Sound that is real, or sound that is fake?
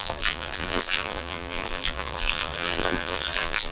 fake